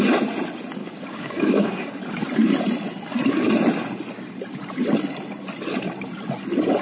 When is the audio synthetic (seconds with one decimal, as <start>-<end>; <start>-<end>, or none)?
0.8-1.9